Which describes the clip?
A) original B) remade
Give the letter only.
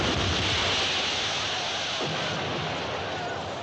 A